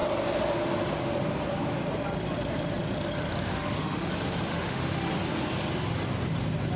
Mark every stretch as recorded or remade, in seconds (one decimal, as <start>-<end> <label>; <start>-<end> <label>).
0.0-3.5 recorded; 3.5-4.1 remade; 4.1-4.5 recorded; 4.5-5.1 remade; 5.1-6.8 recorded